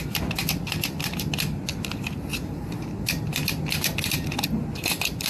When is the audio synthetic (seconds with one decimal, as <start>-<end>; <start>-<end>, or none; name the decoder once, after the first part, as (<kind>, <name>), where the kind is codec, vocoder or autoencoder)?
none